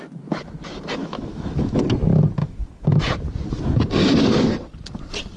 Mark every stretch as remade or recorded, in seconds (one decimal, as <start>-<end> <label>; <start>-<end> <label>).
0.0-1.0 recorded; 1.0-1.8 remade; 1.8-2.4 recorded; 2.4-3.0 remade; 3.0-5.4 recorded